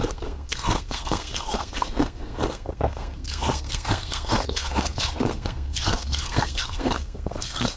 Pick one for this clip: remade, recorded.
remade